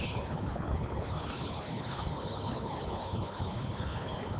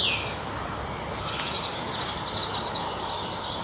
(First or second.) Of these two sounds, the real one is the second